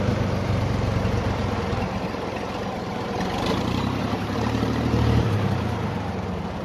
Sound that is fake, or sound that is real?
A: fake